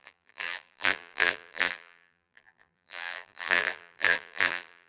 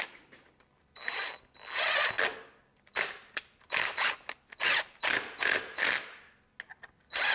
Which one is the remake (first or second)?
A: first